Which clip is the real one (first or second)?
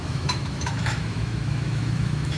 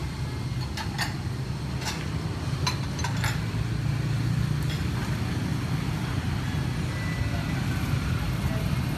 second